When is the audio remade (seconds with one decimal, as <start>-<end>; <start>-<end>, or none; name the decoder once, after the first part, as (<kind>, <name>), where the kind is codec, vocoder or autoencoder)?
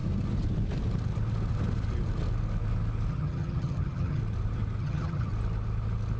3.1-4.2 (vocoder, HiFi-GAN); 4.8-5.3